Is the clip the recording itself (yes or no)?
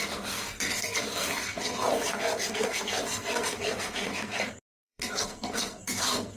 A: no